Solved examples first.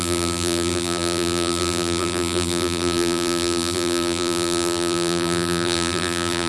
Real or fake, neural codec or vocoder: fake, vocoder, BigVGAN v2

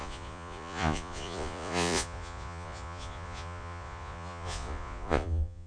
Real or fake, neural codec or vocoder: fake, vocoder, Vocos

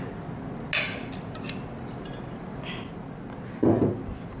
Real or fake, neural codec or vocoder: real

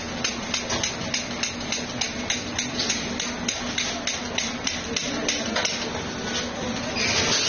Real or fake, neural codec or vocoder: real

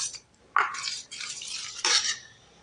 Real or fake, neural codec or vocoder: fake, vocoder, BigVGAN v2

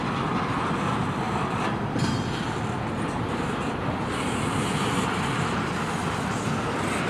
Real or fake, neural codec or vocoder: real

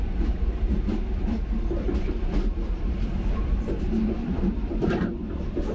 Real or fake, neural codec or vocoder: fake, vocoder, BigVGAN v2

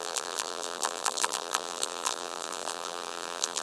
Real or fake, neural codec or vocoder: fake, vocoder, BigVGAN v2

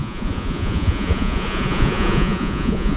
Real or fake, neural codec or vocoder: fake, vocoder, Vocos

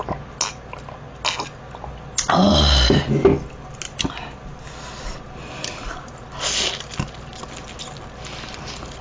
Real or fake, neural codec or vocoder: real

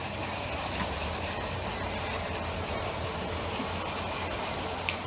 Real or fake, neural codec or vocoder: real